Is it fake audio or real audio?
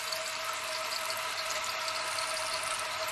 real